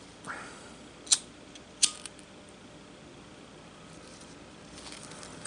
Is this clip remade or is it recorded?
recorded